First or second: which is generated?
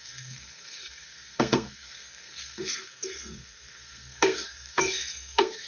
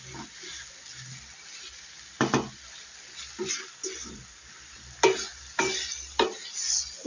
first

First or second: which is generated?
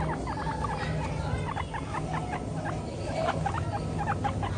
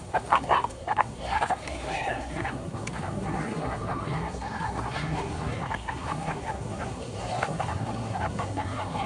second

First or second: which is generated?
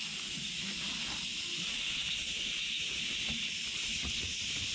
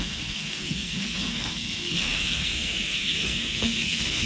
second